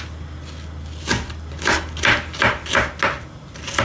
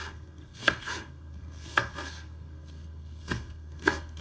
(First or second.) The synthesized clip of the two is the second